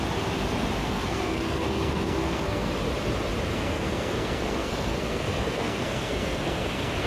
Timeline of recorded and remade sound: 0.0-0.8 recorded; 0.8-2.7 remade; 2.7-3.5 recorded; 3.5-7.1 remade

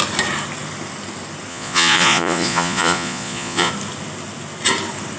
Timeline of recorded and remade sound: 0.0-1.5 recorded; 1.5-3.7 remade; 3.7-5.2 recorded

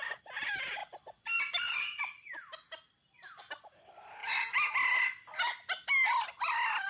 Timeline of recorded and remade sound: 0.0-6.9 recorded

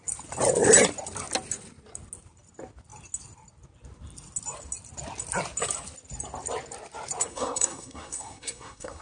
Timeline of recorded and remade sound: 0.0-7.3 recorded; 7.3-9.0 remade

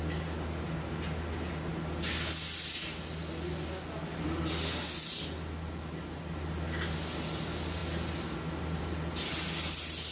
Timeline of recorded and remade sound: 0.0-10.1 recorded

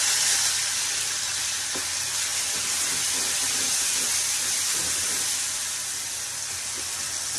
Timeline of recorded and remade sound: 0.0-7.4 recorded